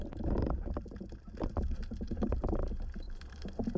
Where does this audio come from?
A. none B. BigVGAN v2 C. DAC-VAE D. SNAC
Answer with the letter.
B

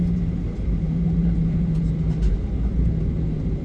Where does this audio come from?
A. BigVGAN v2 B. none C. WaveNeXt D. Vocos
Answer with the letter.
A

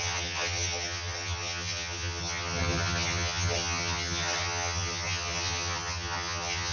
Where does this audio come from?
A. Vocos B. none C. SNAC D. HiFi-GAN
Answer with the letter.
D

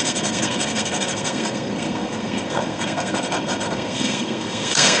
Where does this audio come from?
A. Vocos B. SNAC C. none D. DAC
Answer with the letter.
B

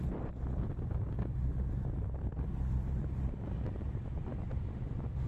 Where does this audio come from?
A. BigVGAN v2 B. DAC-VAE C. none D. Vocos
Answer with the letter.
A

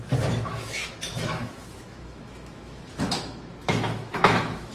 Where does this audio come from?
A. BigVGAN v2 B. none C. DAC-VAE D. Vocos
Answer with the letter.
C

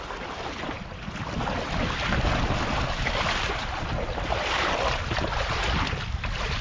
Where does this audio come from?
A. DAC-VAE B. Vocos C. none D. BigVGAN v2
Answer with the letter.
C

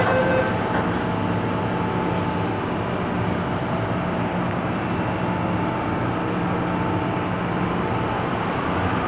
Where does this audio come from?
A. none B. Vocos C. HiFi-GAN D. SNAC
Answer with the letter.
A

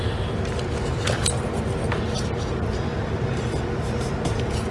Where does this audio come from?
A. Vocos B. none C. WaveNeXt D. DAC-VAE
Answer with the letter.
B